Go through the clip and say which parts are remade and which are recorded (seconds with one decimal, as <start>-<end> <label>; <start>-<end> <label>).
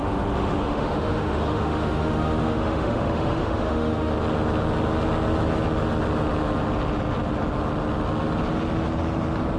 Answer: 0.0-4.1 remade; 4.1-9.6 recorded